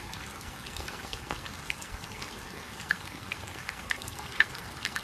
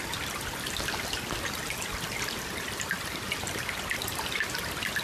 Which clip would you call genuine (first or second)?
second